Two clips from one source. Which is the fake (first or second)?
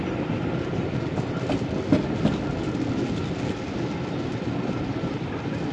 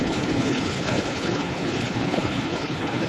second